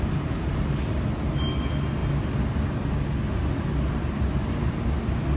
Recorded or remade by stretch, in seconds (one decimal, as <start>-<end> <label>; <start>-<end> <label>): 0.0-5.4 recorded